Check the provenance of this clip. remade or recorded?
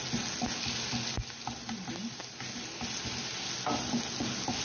recorded